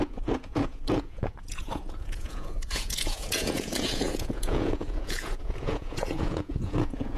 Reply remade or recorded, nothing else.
remade